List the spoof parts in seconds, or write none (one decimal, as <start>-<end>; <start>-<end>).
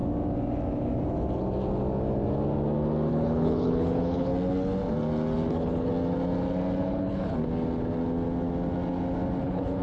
3.1-4.3; 5.5-5.9; 6.8-7.4; 9.4-9.8